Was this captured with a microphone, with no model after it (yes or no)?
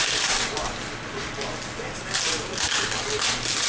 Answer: yes